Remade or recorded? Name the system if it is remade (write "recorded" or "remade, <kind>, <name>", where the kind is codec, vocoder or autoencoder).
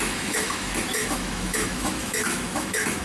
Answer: remade, autoencoder, DAC-VAE